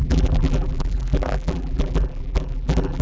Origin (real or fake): fake